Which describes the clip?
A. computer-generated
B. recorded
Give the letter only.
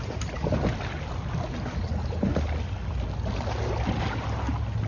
B